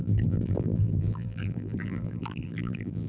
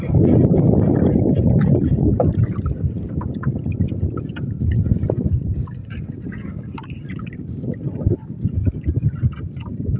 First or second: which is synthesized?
first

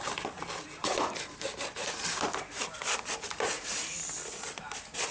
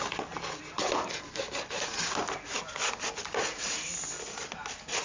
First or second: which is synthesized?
first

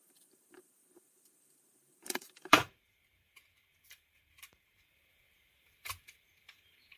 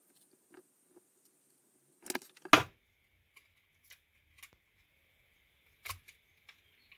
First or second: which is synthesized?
first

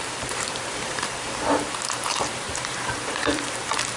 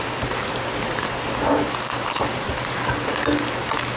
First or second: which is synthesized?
first